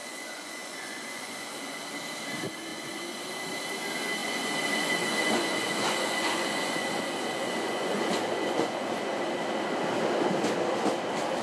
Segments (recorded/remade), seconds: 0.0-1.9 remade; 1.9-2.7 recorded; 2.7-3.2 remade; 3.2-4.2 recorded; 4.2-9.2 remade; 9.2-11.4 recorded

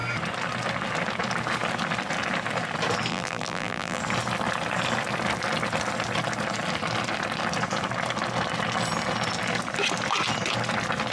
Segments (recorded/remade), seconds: 0.0-3.1 recorded; 3.1-4.0 remade; 4.0-11.1 recorded

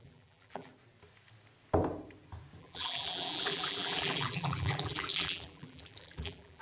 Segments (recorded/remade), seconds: 0.0-0.7 remade; 0.7-2.6 recorded; 2.6-6.6 remade

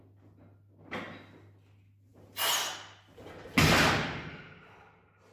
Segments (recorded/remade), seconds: 0.0-5.3 recorded

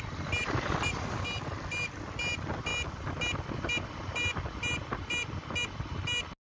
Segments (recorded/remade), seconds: 0.0-6.5 recorded

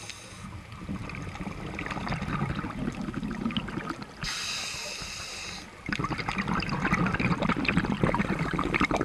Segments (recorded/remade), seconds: 0.0-9.0 recorded

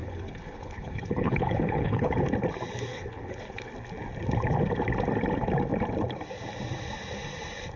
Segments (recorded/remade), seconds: 0.0-2.1 remade; 2.1-2.9 recorded; 2.9-3.7 remade; 3.7-7.8 recorded

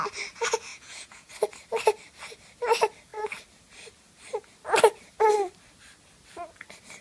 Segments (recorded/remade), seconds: 0.0-0.7 recorded; 0.7-1.3 remade; 1.3-7.0 recorded